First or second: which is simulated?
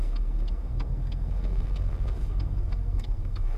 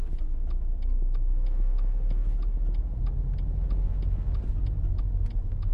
first